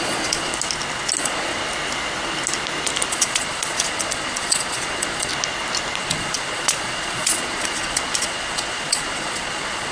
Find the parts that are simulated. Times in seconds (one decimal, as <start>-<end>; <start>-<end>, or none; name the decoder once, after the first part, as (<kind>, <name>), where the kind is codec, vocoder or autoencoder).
0.0-0.5 (vocoder, Vocos); 1.2-1.6; 3.1-5.3; 6.0-9.9

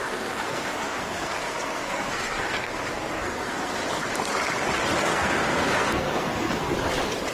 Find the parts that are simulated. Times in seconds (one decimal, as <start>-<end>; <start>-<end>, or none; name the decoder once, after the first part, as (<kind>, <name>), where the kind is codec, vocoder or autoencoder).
0.0-3.8 (codec, SNAC); 5.0-6.7

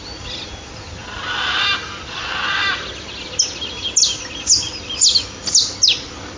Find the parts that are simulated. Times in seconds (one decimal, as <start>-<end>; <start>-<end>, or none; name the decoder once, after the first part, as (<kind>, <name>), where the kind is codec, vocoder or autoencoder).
none

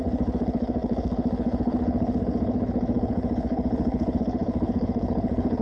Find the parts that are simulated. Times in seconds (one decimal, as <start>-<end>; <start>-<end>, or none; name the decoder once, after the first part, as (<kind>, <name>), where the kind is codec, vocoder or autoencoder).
0.0-5.6 (codec, HILCodec)

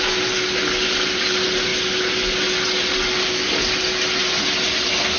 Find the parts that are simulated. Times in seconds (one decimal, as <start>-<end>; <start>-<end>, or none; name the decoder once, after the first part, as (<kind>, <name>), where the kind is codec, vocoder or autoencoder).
none

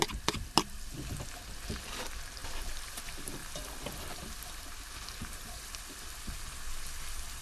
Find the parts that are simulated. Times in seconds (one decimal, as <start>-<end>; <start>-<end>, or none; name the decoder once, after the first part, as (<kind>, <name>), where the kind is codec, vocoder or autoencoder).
5.2-5.7 (vocoder, BigVGAN v2)

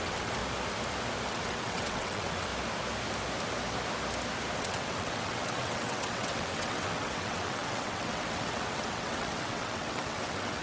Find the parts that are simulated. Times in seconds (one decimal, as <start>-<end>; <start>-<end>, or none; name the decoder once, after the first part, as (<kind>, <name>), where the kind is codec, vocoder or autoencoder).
0.0-0.4 (vocoder, WaveNeXt); 1.3-2.5; 4.6-10.6

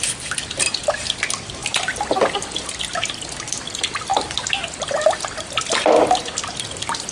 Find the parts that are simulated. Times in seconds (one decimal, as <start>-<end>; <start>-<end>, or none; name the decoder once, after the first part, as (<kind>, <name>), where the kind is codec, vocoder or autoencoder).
none